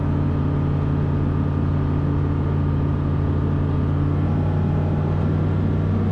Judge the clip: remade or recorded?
recorded